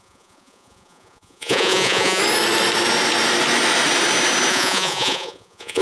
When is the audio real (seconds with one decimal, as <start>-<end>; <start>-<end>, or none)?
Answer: 2.2-4.5